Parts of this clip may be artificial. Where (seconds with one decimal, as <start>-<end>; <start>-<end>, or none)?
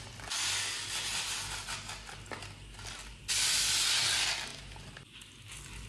none